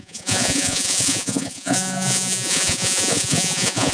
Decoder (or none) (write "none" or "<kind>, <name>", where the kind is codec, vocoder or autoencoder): vocoder, Vocos